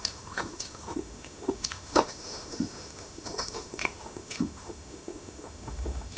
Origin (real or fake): fake